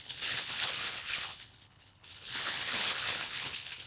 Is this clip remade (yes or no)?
yes